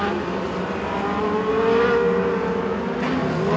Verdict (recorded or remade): recorded